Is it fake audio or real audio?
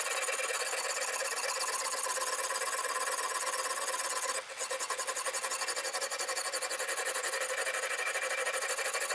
real